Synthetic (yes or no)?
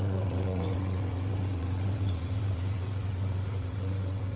yes